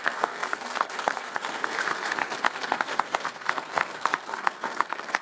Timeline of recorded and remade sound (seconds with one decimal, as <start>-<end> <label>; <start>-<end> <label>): 0.0-5.2 remade